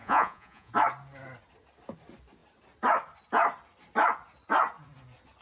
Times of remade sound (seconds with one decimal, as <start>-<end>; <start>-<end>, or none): 0.0-0.7